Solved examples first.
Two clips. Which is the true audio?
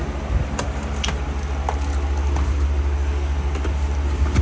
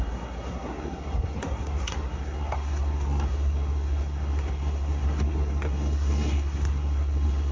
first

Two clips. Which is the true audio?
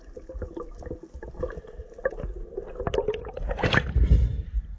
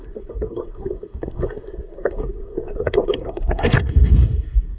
first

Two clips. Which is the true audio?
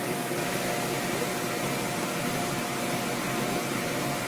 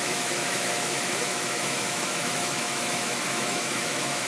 first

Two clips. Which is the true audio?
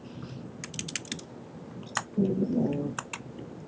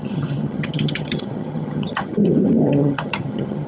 first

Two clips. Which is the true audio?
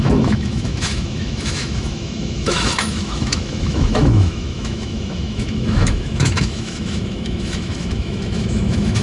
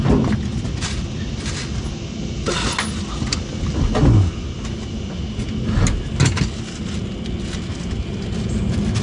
second